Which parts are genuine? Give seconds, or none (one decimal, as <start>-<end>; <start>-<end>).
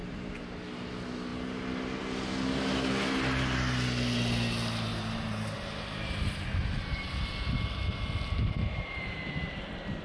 0.6-4.9; 7.3-8.4; 9.6-10.0